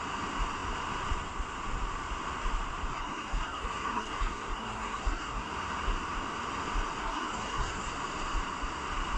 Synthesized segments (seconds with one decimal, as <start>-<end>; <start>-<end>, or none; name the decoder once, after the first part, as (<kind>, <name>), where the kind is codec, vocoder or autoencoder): 2.9-5.5 (codec, SNAC); 7.0-7.9